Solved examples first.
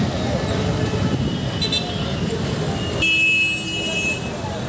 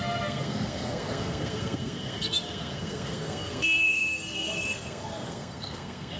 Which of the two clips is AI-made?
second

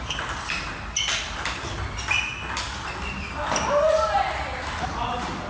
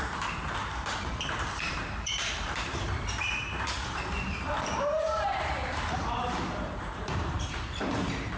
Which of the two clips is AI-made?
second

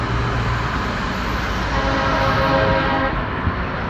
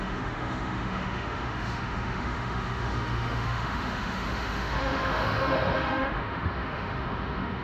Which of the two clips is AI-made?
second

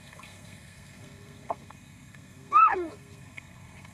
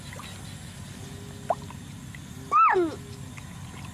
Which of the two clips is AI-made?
first